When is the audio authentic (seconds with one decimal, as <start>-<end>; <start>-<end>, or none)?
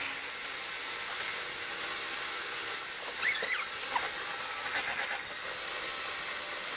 0.0-2.4; 5.7-6.8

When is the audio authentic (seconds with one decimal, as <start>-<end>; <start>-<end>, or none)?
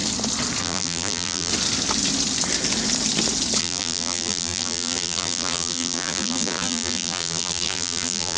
0.0-0.6; 1.5-3.6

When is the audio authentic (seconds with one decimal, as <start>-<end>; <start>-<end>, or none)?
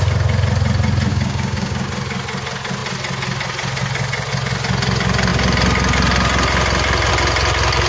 0.0-1.1; 1.9-7.9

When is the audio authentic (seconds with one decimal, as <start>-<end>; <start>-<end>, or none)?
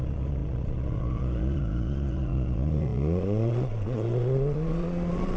none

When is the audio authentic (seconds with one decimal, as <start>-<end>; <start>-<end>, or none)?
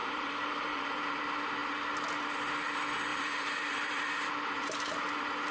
1.2-3.1; 4.6-5.5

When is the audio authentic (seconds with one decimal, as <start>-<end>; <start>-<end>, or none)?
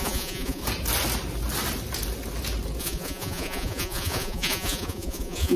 0.6-2.8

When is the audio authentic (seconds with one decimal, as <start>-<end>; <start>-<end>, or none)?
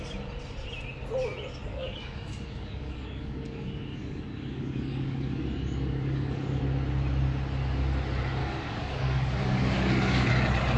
0.0-1.7; 6.6-8.4; 10.3-10.8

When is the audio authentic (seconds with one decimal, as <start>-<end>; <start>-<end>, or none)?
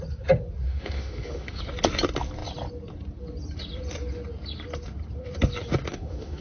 0.0-0.7; 1.6-5.9